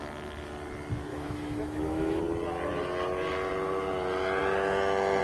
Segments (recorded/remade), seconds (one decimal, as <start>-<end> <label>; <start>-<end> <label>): 0.0-1.1 recorded; 1.1-2.2 remade; 2.2-5.2 recorded